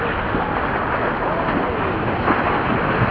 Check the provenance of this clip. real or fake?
real